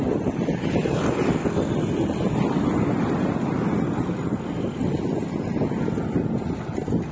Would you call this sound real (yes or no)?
yes